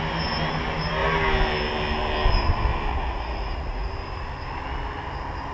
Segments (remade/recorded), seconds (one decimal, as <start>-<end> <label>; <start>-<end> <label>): 0.0-2.9 recorded; 2.9-3.9 remade; 3.9-5.5 recorded

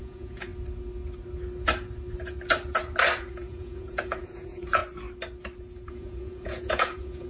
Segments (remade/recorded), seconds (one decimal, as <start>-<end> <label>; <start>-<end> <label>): 0.0-0.5 remade; 0.5-3.2 recorded; 3.2-4.8 remade; 4.8-5.9 recorded; 5.9-7.3 remade

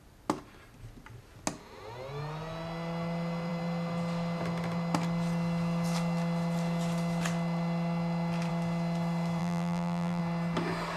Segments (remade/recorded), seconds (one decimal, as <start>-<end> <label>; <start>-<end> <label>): 0.0-9.4 recorded; 9.4-10.2 remade; 10.2-11.0 recorded

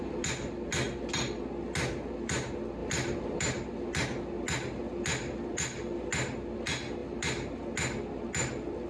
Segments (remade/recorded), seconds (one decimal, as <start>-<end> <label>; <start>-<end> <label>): 0.0-8.9 recorded

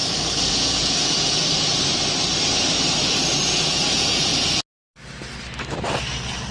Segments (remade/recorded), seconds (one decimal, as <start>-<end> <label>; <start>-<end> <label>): 0.0-0.5 recorded; 0.5-1.4 remade; 1.4-3.6 recorded; 3.6-4.3 remade; 4.3-6.5 recorded

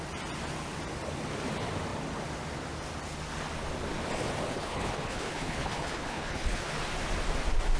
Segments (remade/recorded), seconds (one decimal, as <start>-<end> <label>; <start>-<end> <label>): 0.0-4.5 recorded; 4.5-6.7 remade; 6.7-7.8 recorded